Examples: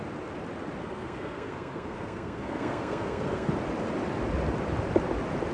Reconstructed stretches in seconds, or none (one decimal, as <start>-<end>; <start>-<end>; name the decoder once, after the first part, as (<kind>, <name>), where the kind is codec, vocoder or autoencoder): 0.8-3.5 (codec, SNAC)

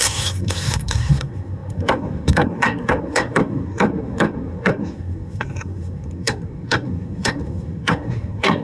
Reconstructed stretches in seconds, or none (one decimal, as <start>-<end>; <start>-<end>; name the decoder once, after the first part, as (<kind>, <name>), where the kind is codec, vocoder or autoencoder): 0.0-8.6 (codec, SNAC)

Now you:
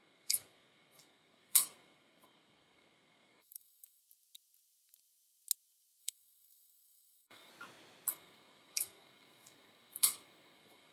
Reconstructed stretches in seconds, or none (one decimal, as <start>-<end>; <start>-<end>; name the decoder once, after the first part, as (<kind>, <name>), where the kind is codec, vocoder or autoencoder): 0.0-4.0 (codec, SNAC); 6.0-7.5; 8.1-10.9

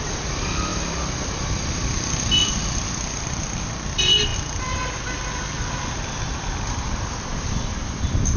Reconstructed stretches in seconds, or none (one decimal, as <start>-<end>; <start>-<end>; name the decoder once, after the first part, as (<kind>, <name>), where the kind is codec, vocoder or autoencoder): none

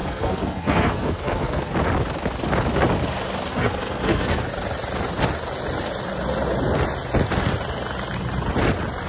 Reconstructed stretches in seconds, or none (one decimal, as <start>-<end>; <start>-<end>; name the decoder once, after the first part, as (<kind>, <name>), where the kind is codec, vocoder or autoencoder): 0.0-1.7 (codec, SNAC); 3.5-4.4

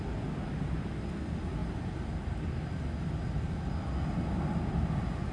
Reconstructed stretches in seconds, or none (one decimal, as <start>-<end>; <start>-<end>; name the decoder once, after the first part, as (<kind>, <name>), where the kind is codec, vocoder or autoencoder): none